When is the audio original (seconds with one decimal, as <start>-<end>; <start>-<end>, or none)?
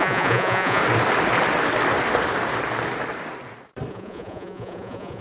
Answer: 0.8-3.9